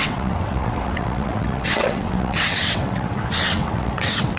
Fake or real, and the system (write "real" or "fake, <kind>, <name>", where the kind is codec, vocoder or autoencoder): fake, vocoder, WaveNeXt